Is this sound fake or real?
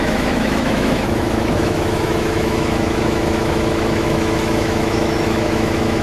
fake